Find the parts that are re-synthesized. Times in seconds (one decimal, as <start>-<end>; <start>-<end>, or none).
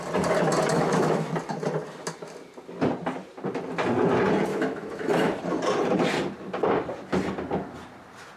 0.7-1.3; 4.5-5.4